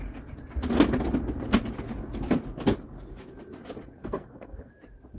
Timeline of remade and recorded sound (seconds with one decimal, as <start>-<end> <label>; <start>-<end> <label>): 0.0-4.0 recorded; 4.0-4.7 remade; 4.7-5.2 recorded